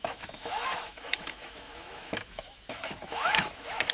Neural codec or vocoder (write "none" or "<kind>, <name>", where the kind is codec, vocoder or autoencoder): autoencoder, DAC-VAE